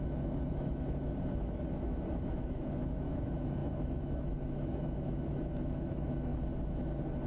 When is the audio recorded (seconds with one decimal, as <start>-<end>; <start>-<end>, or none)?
6.3-7.3